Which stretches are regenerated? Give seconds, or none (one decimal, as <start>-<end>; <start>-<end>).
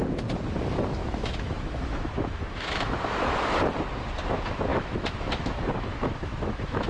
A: 1.0-3.6; 4.7-6.9